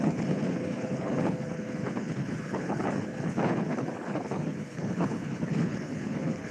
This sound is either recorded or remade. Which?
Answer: remade